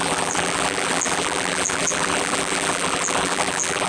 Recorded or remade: remade